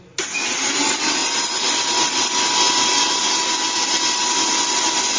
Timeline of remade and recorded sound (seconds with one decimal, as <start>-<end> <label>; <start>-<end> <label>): 0.0-5.2 recorded